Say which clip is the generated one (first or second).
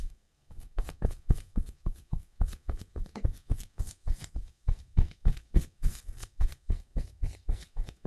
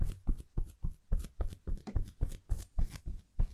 first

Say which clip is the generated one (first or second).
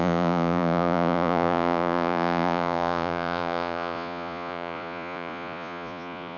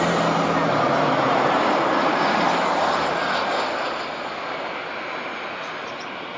first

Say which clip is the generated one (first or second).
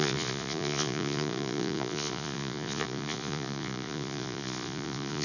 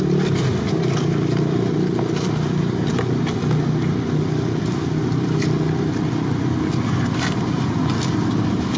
first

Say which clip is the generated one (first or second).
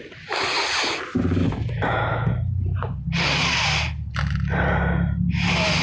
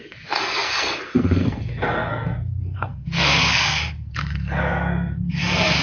second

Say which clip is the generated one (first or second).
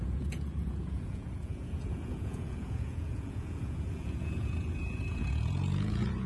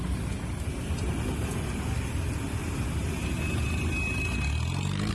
first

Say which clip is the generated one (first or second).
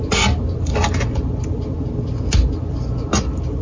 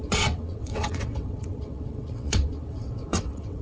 second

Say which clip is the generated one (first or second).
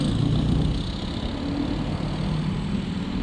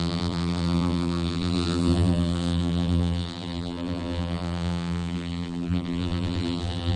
second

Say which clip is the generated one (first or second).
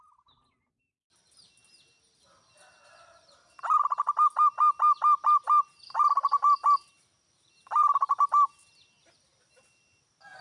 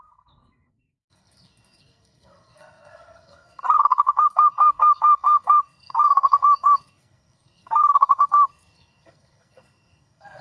second